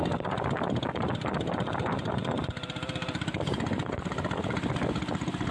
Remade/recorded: recorded